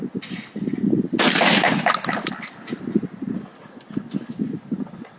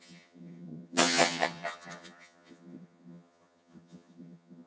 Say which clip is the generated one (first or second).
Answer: second